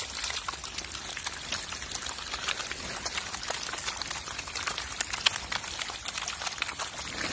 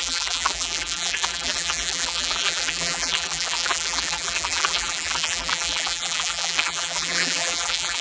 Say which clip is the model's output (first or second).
second